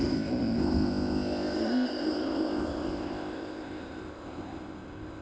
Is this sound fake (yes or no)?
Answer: yes